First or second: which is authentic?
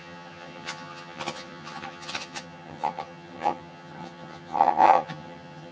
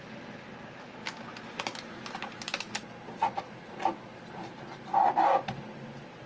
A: second